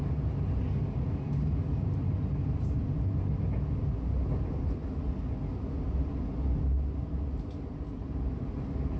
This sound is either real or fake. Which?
real